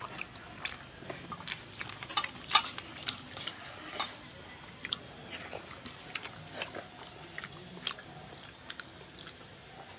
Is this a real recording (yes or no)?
yes